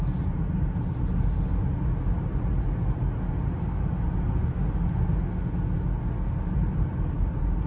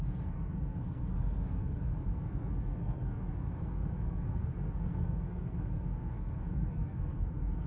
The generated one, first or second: second